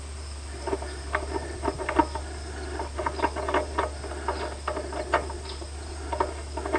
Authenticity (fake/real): real